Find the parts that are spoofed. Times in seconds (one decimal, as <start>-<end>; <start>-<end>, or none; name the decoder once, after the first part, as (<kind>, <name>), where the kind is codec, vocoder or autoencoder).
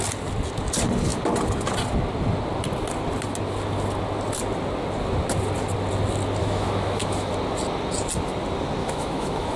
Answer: 6.4-7.3 (autoencoder, DAC-VAE); 8.8-9.6